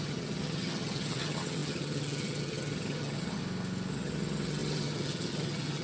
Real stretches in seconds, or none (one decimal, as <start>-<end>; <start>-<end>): 3.4-3.9